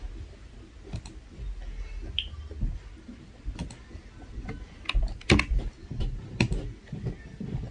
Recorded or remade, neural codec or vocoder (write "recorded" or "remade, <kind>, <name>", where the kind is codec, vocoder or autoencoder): recorded